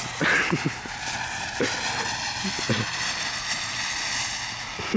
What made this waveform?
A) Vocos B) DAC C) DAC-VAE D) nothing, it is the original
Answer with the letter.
D